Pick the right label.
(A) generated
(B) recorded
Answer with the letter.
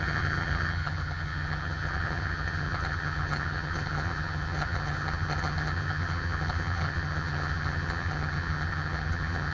A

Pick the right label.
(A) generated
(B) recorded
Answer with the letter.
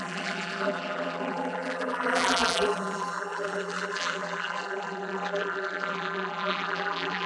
A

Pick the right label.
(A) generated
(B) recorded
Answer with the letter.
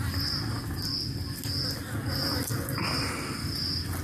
B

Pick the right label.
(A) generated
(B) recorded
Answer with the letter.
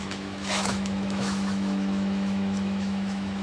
A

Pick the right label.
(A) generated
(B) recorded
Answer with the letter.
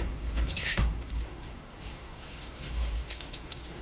A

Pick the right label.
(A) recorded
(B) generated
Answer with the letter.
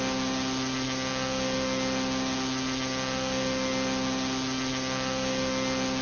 A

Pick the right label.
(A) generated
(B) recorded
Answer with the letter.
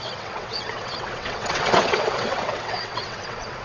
A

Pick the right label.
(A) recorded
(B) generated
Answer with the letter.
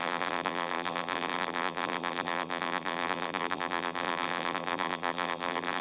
B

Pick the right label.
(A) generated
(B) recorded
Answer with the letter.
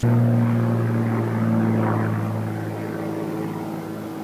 B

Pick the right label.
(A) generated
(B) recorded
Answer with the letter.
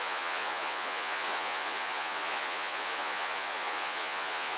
A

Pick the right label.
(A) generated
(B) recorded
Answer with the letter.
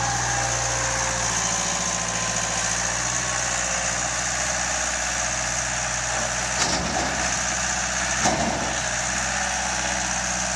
B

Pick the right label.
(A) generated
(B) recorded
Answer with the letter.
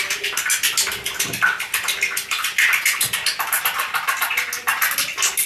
B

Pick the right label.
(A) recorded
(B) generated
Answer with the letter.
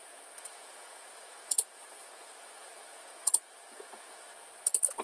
B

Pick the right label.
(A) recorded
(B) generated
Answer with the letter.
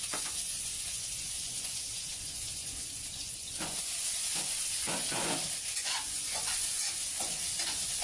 B